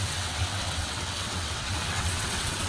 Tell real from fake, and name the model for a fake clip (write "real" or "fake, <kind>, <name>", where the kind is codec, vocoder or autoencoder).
fake, vocoder, WaveNeXt